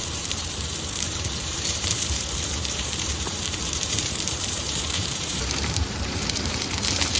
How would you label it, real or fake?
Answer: fake